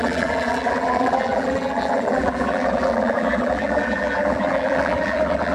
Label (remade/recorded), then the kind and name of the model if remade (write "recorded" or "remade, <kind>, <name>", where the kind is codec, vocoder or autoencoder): remade, vocoder, BigVGAN v2